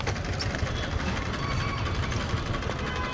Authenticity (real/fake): real